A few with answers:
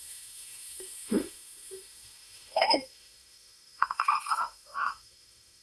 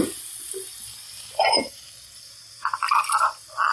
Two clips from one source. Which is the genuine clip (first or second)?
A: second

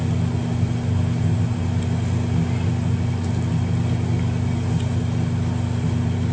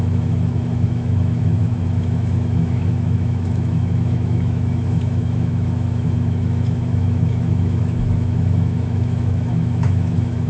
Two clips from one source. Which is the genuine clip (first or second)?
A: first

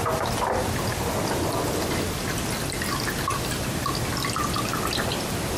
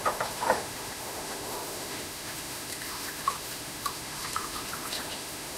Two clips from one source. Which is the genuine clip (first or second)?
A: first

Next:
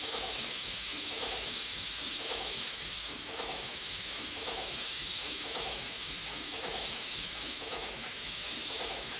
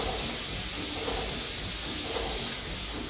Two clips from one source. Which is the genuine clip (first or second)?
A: second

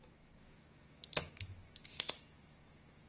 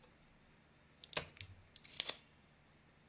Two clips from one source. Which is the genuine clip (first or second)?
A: second